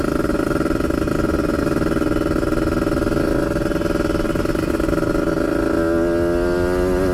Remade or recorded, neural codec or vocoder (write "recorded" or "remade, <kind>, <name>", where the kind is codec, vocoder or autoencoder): recorded